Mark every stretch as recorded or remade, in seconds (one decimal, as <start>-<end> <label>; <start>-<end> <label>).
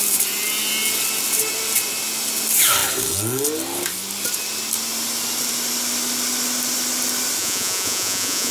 0.0-7.4 recorded; 7.4-8.5 remade